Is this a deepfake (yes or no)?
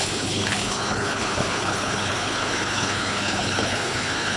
yes